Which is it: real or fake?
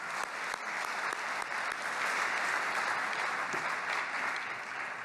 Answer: fake